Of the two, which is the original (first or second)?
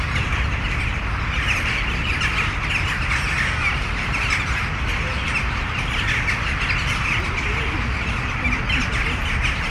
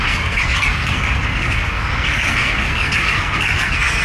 first